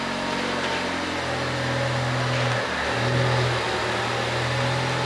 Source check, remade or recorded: recorded